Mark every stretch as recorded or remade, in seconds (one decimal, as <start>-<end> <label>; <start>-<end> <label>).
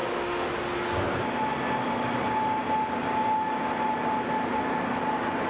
0.0-0.5 remade; 0.5-5.5 recorded